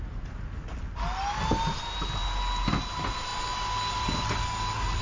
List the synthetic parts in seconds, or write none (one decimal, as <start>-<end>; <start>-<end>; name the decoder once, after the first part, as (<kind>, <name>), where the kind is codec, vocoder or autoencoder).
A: none